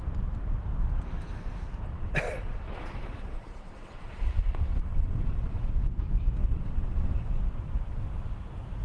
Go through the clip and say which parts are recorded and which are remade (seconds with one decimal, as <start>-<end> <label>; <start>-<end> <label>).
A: 0.0-1.9 recorded; 1.9-5.7 remade; 5.7-6.4 recorded; 6.4-7.4 remade; 7.4-8.8 recorded